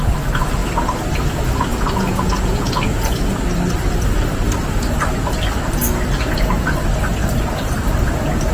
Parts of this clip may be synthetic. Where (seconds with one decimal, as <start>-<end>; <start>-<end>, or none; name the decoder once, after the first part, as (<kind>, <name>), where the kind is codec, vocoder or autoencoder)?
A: 1.7-3.4 (vocoder, Vocos)